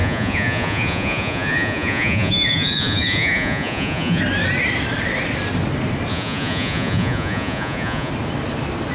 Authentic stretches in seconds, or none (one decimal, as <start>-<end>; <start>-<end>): 4.2-6.1; 8.1-8.9